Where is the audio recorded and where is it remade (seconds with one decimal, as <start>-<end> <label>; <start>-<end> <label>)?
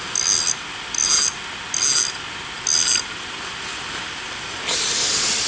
0.0-5.5 recorded